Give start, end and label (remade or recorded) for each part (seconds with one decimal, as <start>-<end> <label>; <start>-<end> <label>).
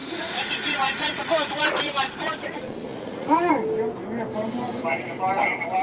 0.0-3.5 remade; 3.5-5.8 recorded